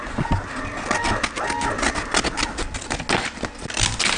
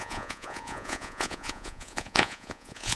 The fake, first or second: second